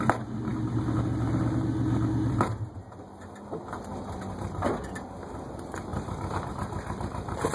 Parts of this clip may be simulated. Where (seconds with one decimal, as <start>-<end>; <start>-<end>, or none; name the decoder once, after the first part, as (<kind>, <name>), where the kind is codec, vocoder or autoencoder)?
none